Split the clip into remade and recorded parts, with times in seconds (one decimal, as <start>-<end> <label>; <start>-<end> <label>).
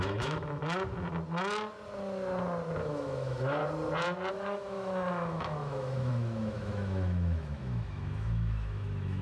0.0-0.6 remade; 0.6-2.8 recorded; 2.8-3.6 remade; 3.6-4.3 recorded; 4.3-9.2 remade